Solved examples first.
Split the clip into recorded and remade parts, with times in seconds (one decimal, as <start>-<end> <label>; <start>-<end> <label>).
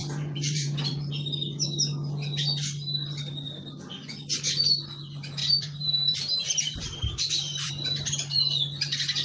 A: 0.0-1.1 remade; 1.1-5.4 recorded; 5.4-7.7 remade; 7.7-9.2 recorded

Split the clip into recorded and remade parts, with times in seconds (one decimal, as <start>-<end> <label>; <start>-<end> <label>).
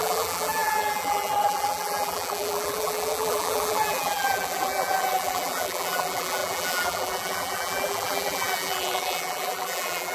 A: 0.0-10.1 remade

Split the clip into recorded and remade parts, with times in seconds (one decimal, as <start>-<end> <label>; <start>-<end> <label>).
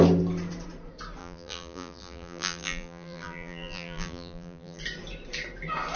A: 0.0-1.2 recorded; 1.2-4.8 remade; 4.8-6.0 recorded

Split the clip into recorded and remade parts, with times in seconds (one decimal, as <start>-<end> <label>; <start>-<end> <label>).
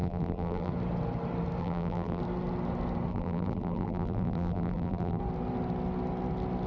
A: 0.0-0.7 remade; 0.7-1.6 recorded; 1.6-2.2 remade; 2.2-3.1 recorded; 3.1-5.2 remade; 5.2-6.7 recorded